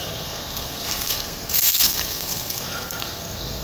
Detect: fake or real fake